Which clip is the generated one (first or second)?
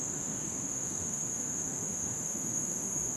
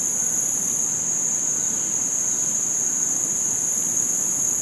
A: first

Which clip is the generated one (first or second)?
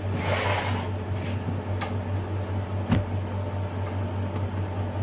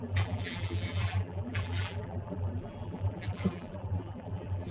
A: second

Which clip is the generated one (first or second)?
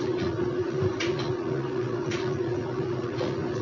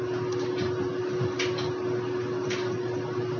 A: first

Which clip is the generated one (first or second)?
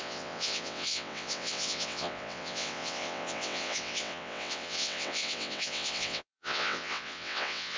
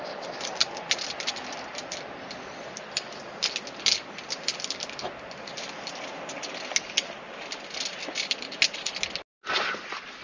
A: first